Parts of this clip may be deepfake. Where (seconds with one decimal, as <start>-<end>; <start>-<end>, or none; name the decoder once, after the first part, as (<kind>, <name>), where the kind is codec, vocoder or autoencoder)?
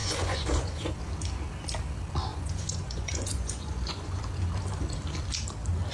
0.0-0.9 (vocoder, Vocos); 2.3-4.3